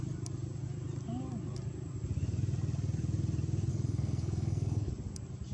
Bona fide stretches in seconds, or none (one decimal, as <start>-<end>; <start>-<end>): 0.0-3.7; 4.9-5.5